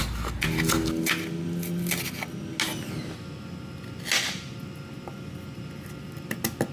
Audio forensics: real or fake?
real